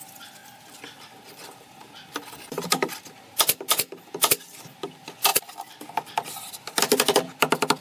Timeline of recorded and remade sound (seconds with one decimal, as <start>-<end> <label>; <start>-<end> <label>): 0.0-5.3 recorded; 5.3-5.8 remade; 5.8-7.8 recorded